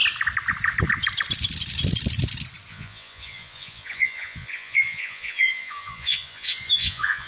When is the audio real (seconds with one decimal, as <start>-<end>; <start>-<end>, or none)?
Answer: 0.0-2.7